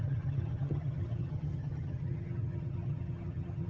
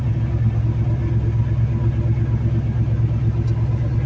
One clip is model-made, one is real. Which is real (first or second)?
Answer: second